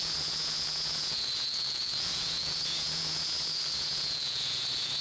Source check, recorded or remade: remade